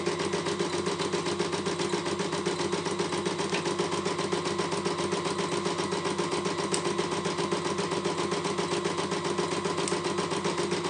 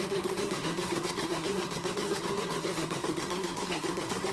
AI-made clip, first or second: second